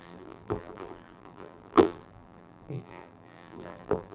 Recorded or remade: remade